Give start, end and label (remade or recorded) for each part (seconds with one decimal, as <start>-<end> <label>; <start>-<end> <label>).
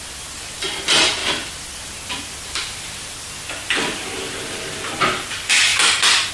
0.0-6.3 recorded